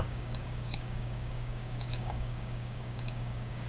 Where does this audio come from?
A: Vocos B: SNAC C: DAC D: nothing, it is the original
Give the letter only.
C